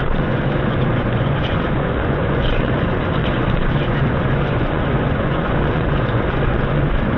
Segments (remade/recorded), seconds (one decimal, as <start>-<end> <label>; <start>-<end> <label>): 0.0-7.2 remade

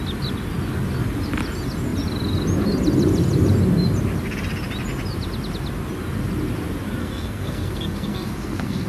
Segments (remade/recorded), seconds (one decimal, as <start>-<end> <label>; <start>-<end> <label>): 0.0-7.0 recorded; 7.0-8.9 remade

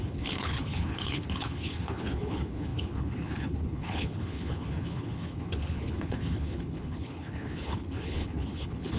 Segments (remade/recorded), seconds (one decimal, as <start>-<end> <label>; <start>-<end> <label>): 0.0-9.0 remade

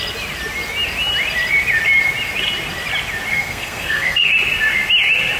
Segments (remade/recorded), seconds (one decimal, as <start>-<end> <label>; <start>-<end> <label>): 0.0-3.3 recorded; 3.3-4.3 remade; 4.3-5.4 recorded